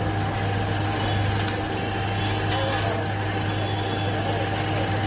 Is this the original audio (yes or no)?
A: yes